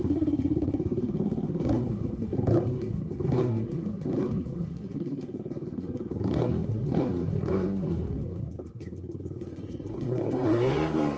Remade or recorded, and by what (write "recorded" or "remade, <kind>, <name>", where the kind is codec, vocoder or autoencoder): remade, codec, SNAC